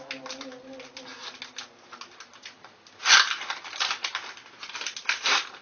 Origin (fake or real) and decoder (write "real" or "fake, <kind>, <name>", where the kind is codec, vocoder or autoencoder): real